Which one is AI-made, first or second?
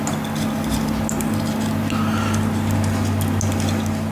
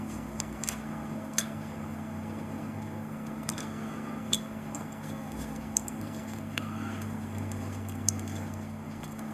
second